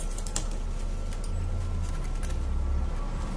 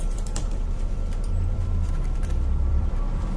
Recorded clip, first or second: first